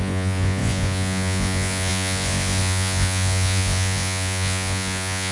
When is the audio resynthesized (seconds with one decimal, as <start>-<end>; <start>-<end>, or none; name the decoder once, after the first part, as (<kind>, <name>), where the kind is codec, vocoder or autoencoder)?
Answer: 0.0-5.3 (vocoder, Vocos)